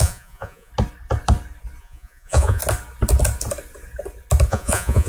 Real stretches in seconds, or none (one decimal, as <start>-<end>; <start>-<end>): 0.7-1.8; 2.6-4.5